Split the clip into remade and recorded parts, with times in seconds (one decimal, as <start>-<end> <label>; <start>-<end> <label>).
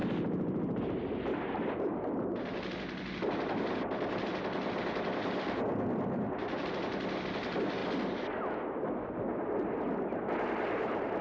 0.0-11.2 recorded